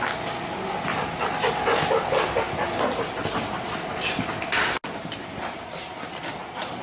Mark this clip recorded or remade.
recorded